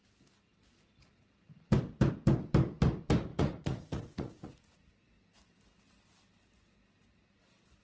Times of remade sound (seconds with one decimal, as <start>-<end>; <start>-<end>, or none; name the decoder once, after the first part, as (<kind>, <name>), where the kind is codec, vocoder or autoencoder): 3.3-4.9 (vocoder, Vocos)